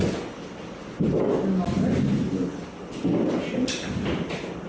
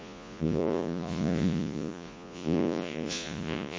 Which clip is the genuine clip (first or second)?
first